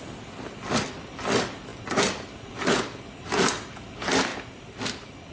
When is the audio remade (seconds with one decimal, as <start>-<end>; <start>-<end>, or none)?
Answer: none